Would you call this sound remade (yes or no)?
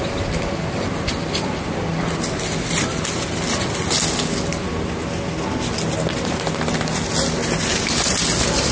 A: no